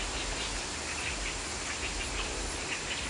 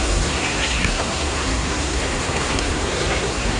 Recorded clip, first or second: first